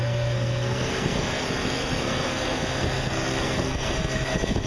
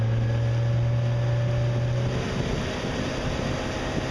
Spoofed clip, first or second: first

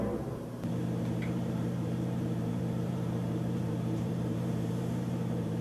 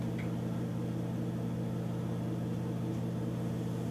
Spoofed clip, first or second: first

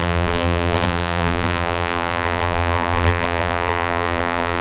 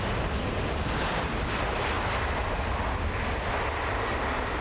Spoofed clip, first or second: first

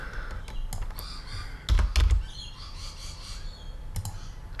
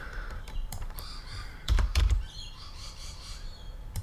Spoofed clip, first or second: second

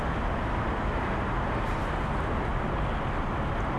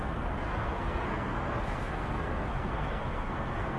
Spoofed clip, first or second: second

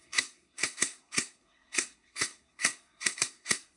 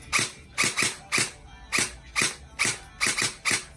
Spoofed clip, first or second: first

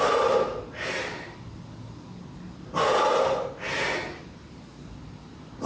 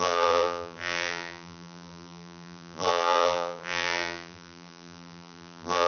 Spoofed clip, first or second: second